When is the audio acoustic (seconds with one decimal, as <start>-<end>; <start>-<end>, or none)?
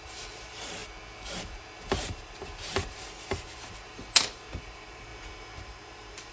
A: 0.8-1.4; 5.1-5.6